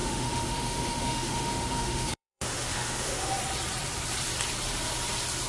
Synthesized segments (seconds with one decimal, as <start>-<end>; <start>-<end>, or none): 0.0-3.3